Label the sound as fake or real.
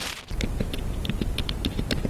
real